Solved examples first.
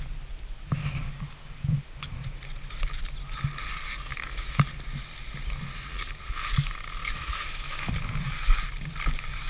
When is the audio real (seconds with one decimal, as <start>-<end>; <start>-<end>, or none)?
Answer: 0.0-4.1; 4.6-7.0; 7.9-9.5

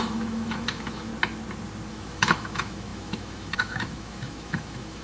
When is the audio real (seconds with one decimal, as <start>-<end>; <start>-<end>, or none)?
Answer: 1.1-1.9

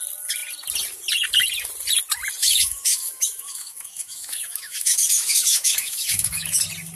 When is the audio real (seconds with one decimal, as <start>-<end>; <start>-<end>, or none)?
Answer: 0.0-2.4; 6.6-7.0

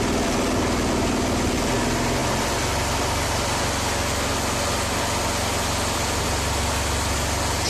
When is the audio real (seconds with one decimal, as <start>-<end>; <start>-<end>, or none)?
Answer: 0.0-7.7

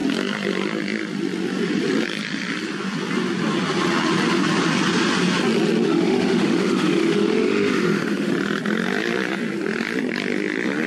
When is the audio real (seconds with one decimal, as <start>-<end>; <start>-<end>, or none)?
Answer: 0.0-5.9; 8.3-10.9